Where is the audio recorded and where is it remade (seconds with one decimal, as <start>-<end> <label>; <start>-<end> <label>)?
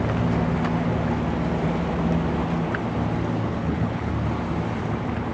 0.0-3.5 recorded; 3.5-4.1 remade; 4.1-5.3 recorded